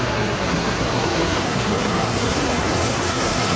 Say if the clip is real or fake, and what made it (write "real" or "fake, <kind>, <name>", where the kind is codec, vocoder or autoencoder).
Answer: fake, codec, SNAC